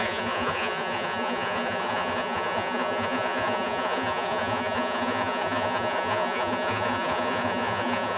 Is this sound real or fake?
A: fake